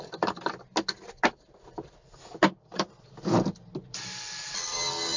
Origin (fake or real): real